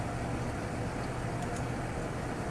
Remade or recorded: recorded